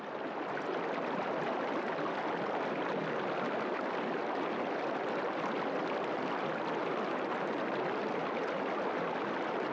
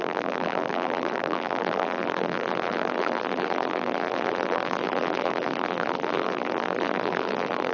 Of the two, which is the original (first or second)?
first